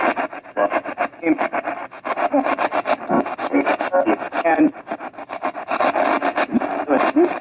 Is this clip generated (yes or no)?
no